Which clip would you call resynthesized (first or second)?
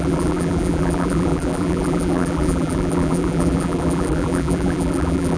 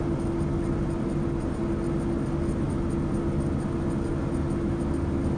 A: first